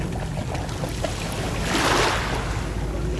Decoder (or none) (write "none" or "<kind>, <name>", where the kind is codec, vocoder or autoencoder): none